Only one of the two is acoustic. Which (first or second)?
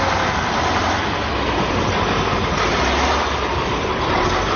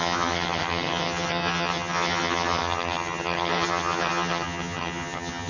first